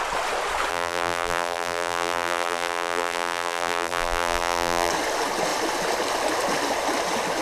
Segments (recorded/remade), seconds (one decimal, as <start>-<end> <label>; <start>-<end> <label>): 0.0-0.7 recorded; 0.7-4.9 remade; 4.9-7.4 recorded